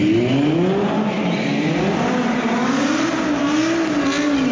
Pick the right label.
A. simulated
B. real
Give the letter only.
B